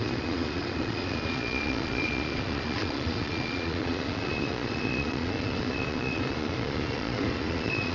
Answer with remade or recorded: remade